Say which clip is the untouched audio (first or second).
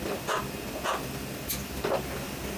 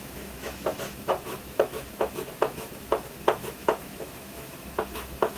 first